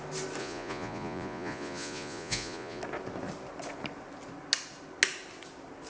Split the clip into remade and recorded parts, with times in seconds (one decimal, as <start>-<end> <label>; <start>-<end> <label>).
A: 0.0-0.4 recorded; 0.4-2.8 remade; 2.8-5.9 recorded